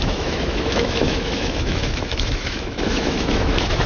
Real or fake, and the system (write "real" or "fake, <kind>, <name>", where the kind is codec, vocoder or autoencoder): fake, autoencoder, DAC-VAE